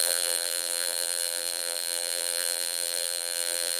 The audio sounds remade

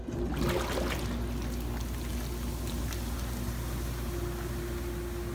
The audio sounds recorded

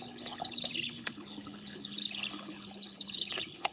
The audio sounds remade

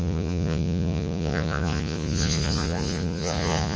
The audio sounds remade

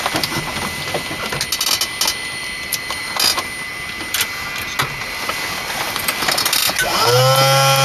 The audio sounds recorded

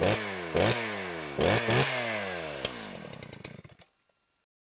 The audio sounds recorded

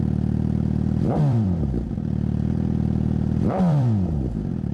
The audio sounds remade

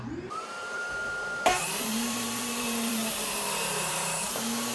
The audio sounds remade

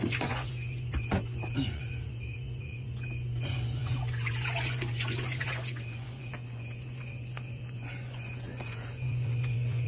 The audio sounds remade